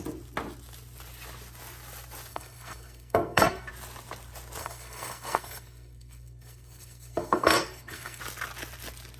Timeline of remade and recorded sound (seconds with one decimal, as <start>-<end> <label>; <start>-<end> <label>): 0.0-2.3 recorded; 2.3-3.7 remade; 3.7-4.6 recorded; 4.6-8.2 remade; 8.2-9.2 recorded